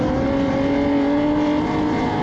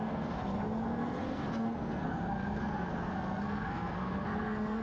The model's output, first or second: second